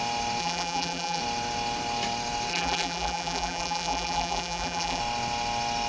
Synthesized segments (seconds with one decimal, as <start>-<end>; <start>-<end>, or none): 0.4-1.2; 2.5-5.0